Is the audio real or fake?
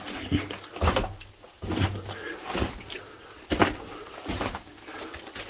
real